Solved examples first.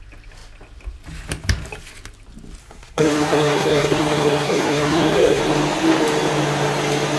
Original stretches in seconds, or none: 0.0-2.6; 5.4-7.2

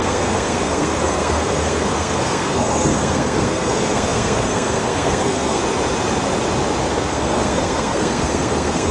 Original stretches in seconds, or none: 5.6-7.0

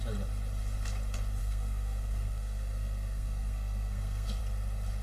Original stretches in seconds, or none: 0.0-1.4; 4.4-5.0

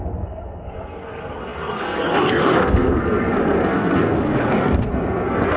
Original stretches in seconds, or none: none